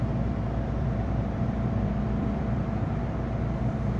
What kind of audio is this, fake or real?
fake